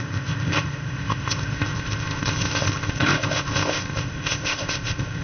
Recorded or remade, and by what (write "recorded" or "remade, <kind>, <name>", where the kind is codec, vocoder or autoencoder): remade, codec, ZipCodec